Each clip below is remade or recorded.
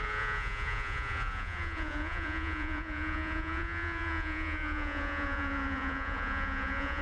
remade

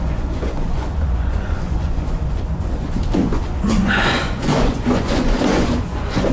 remade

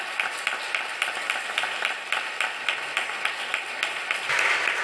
recorded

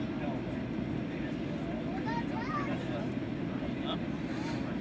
recorded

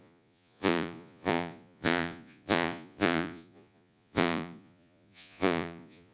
remade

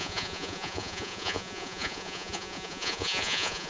remade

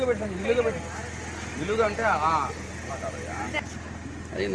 recorded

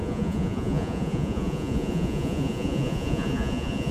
remade